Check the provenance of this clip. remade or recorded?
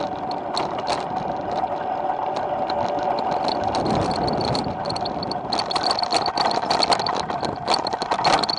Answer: recorded